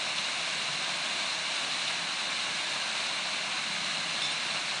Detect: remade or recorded recorded